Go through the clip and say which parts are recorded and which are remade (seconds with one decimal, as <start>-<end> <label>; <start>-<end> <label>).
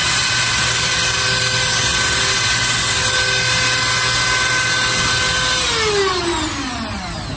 0.0-7.4 recorded